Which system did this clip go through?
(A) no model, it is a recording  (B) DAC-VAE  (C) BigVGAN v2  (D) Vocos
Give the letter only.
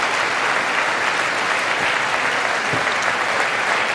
A